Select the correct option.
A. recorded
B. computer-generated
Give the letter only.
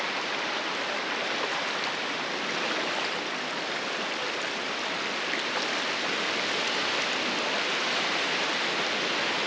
A